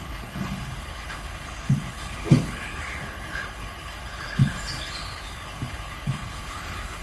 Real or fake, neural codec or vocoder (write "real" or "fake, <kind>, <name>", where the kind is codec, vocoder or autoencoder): fake, codec, HILCodec